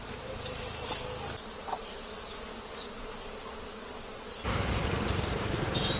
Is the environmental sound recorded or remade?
recorded